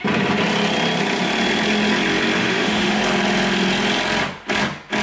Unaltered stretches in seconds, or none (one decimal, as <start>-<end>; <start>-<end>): 0.0-2.4; 3.0-5.0